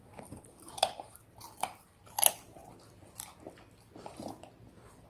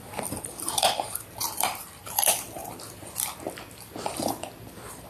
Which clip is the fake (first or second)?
second